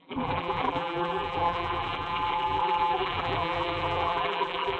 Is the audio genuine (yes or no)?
no